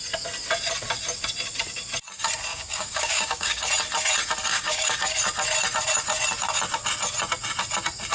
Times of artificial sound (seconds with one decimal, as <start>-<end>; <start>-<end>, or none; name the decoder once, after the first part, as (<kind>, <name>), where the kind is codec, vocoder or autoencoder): 2.5-3.7 (codec, DAC); 4.5-5.2